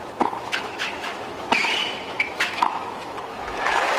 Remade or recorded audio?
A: remade